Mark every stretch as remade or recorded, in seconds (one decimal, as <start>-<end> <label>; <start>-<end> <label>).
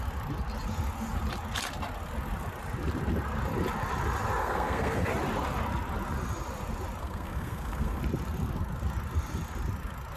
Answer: 0.0-4.4 recorded; 4.4-5.1 remade; 5.1-7.0 recorded; 7.0-8.0 remade; 8.0-10.2 recorded